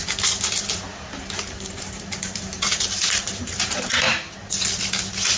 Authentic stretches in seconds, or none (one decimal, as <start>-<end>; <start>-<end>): 0.0-0.9; 4.1-5.4